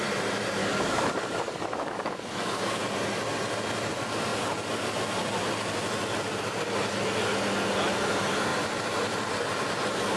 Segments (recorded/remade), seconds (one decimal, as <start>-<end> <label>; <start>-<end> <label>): 0.0-0.6 recorded; 0.6-2.8 remade; 2.8-10.2 recorded